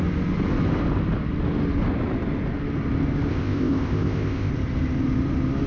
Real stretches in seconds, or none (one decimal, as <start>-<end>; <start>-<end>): 0.0-3.3; 4.5-5.7